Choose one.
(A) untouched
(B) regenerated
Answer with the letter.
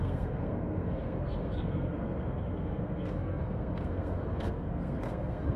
B